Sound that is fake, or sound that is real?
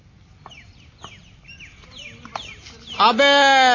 real